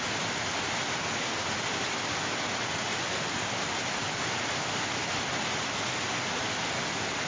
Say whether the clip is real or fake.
real